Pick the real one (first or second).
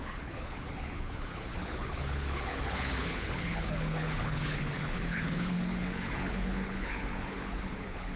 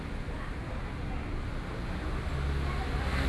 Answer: second